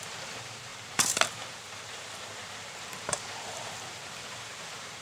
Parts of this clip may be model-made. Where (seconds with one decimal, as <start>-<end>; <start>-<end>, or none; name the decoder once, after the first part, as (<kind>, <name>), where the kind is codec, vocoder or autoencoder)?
0.0-5.0 (vocoder, BigVGAN v2)